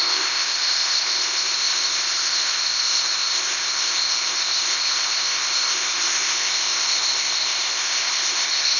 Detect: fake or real fake